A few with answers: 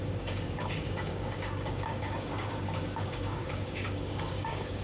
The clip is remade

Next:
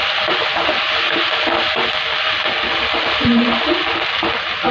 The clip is recorded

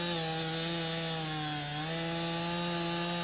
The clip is recorded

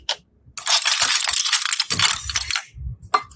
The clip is recorded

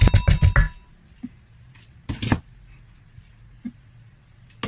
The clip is recorded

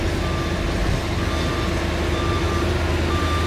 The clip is recorded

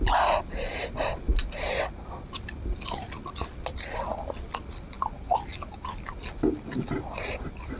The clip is recorded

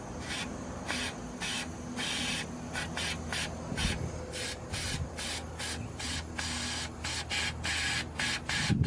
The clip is recorded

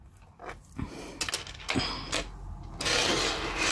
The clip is recorded